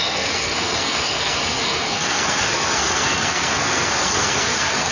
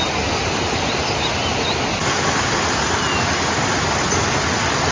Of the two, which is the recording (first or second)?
second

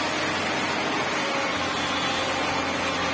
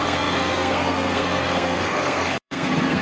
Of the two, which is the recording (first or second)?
first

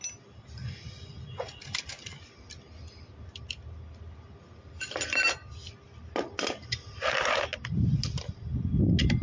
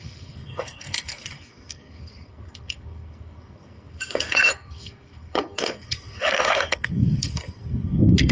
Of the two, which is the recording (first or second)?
first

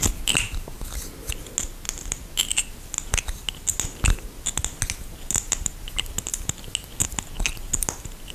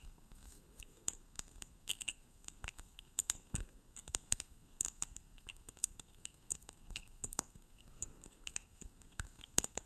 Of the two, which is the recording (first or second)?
first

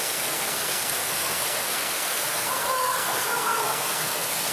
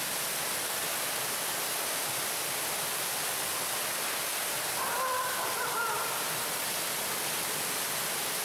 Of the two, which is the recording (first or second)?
second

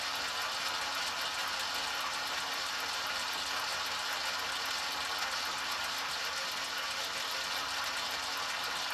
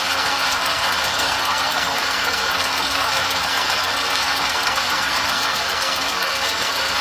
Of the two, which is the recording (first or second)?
first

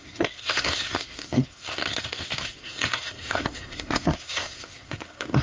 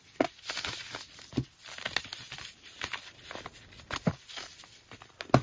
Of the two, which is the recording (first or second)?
second